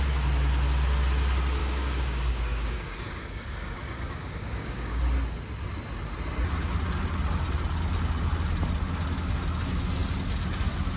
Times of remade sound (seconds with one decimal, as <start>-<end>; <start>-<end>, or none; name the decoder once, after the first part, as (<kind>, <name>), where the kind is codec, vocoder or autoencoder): 1.6-5.0 (codec, DAC)